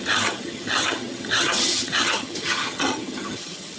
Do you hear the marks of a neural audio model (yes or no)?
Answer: yes